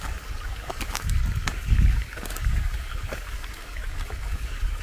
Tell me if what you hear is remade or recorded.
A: remade